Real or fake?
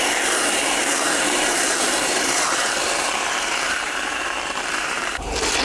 fake